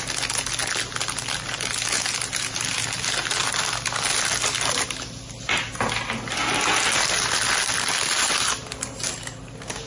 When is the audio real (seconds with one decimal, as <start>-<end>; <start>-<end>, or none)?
0.0-9.9